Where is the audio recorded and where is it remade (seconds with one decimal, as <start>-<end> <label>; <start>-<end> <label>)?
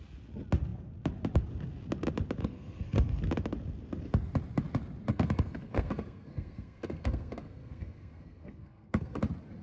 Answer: 0.0-2.4 recorded; 2.4-3.2 remade; 3.2-5.1 recorded; 5.1-9.2 remade; 9.2-9.6 recorded